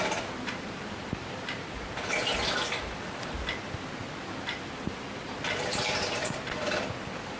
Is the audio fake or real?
fake